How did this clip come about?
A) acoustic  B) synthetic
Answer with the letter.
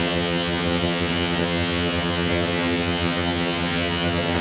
B